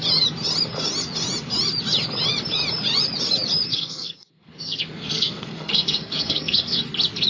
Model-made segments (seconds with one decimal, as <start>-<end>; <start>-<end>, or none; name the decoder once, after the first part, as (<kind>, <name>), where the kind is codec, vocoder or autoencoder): 3.7-6.8 (codec, SNAC)